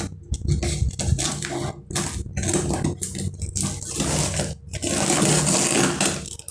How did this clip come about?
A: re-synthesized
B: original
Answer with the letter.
B